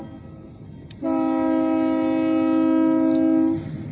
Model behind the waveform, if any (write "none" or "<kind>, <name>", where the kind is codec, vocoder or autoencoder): none